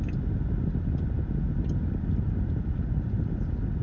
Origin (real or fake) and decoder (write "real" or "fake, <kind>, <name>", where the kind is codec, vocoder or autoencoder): real